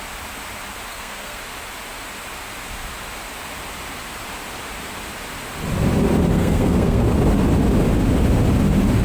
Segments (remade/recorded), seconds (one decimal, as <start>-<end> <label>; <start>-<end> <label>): 0.0-0.9 recorded; 0.9-1.4 remade; 1.4-6.3 recorded; 6.3-7.0 remade; 7.0-9.0 recorded